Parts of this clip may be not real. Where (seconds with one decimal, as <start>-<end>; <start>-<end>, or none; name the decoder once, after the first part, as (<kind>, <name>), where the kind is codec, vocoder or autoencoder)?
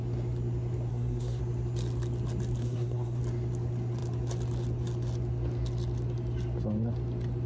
0.9-1.4 (codec, SNAC); 2.6-3.2